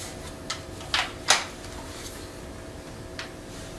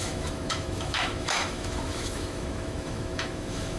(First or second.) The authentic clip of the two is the first